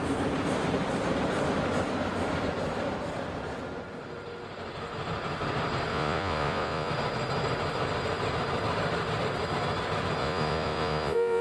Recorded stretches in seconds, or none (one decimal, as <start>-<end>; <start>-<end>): 0.0-5.9; 6.9-10.2